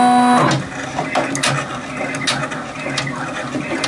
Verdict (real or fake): real